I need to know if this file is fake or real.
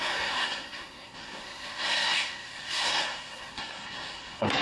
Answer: fake